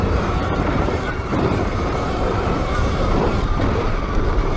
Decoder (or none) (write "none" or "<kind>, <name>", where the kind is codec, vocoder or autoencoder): vocoder, BigVGAN v2